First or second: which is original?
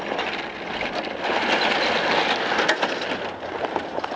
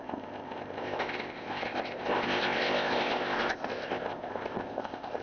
first